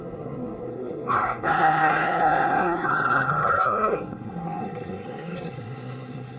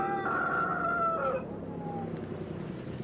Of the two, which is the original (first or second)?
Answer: second